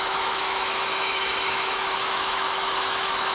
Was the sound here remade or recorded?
remade